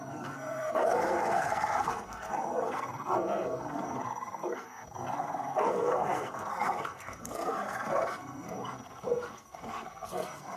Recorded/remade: remade